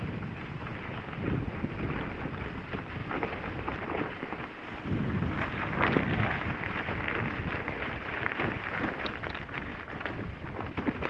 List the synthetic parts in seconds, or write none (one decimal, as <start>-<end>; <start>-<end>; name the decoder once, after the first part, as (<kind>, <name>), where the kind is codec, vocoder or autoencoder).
0.0-3.0 (vocoder, BigVGAN v2); 3.7-9.7; 10.7-11.1